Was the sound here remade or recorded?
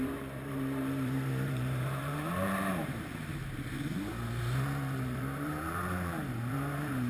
remade